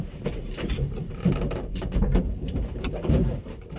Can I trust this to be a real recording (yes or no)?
no